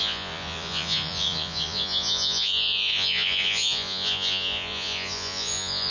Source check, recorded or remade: remade